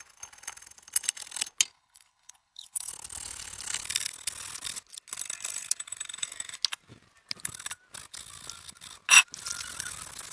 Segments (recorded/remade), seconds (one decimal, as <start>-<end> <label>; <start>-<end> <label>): 0.0-1.7 recorded; 1.7-2.9 remade; 2.9-10.3 recorded